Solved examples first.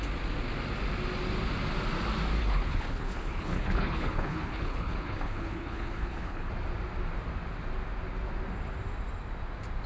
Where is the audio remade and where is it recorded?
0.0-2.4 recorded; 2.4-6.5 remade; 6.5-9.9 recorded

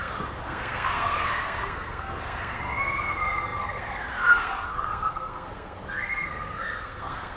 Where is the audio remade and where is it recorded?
0.0-7.4 remade

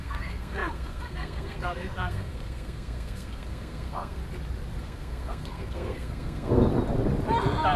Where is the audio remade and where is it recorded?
0.0-4.2 remade; 4.2-4.8 recorded; 4.8-6.7 remade; 6.7-7.8 recorded

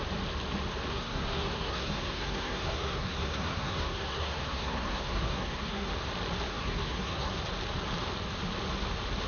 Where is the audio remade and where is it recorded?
0.0-0.9 recorded; 0.9-5.9 remade; 5.9-6.5 recorded; 6.5-7.3 remade; 7.3-9.3 recorded

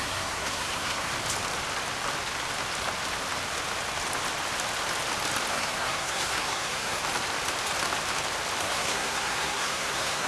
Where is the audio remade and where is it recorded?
0.0-1.1 remade; 1.1-5.5 recorded; 5.5-7.0 remade; 7.0-8.6 recorded; 8.6-10.3 remade

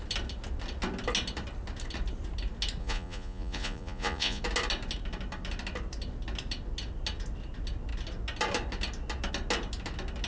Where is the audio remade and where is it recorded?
0.0-2.8 recorded; 2.8-4.4 remade; 4.4-10.3 recorded